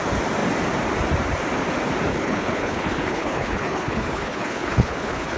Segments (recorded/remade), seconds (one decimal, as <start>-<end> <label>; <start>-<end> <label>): 0.0-2.1 recorded; 2.1-5.4 remade

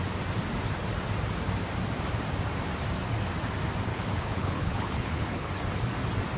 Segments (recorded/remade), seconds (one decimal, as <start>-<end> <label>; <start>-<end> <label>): 0.0-3.9 recorded; 3.9-5.5 remade; 5.5-6.4 recorded

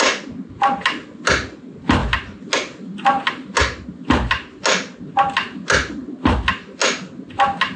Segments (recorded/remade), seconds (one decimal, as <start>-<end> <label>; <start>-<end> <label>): 0.0-7.8 recorded